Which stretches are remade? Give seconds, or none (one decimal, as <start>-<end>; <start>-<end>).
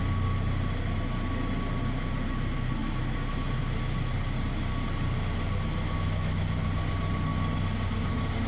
none